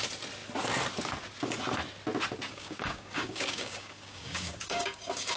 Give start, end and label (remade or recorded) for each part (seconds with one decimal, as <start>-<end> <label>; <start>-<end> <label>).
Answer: 0.0-2.5 recorded; 2.5-5.4 remade